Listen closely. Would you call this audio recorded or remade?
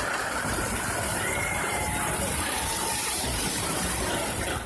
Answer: remade